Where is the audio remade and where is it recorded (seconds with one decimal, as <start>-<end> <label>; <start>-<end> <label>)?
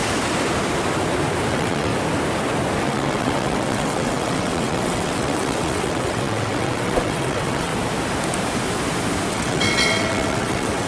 0.0-1.5 recorded; 1.5-1.9 remade; 1.9-2.8 recorded; 2.8-7.7 remade; 7.7-9.3 recorded; 9.3-10.9 remade